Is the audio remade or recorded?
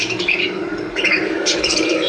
remade